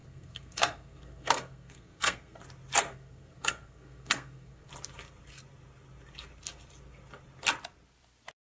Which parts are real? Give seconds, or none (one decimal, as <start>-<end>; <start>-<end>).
2.4-2.9; 4.7-8.4